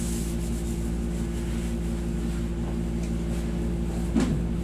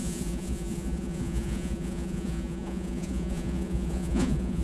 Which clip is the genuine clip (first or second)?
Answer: first